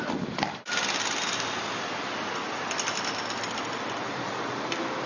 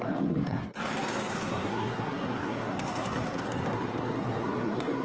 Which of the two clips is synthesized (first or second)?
second